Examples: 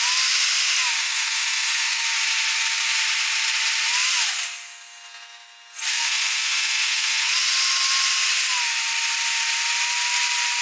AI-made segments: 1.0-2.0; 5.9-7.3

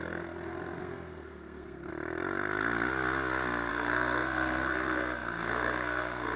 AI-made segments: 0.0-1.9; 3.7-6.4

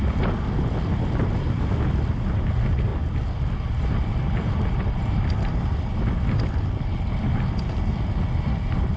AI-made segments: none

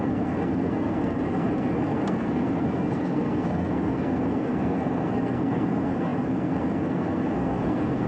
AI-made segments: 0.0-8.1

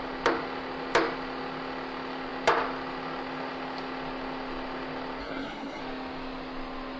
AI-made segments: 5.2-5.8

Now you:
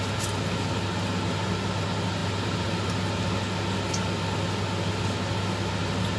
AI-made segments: none

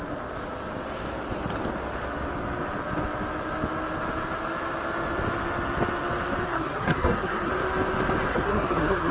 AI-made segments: 6.5-7.5; 8.3-9.1